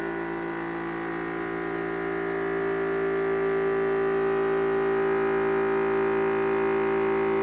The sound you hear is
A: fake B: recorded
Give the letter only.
B